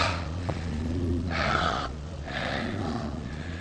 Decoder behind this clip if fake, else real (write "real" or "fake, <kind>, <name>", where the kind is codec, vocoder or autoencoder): fake, vocoder, Vocos